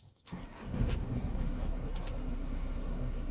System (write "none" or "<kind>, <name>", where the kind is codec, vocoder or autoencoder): codec, SNAC